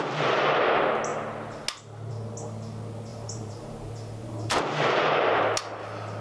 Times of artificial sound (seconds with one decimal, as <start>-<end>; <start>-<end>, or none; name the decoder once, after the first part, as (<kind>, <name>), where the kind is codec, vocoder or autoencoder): 3.1-5.4 (vocoder, BigVGAN v2)